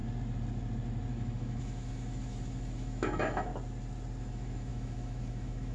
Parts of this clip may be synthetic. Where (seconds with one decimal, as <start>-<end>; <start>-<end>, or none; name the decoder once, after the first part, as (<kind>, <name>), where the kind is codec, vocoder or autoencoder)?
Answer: 1.1-3.5 (autoencoder, DAC-VAE); 4.2-5.7